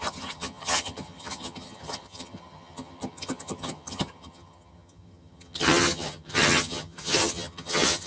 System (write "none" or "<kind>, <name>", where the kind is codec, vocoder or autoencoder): vocoder, HiFi-GAN